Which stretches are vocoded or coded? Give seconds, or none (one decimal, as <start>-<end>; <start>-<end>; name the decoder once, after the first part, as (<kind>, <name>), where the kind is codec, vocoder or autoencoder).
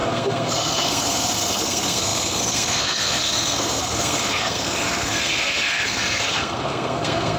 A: 0.0-7.4 (codec, SNAC)